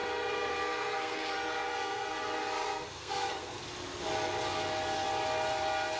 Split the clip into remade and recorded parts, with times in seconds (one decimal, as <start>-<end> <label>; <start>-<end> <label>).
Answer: 0.0-3.6 remade; 3.6-6.0 recorded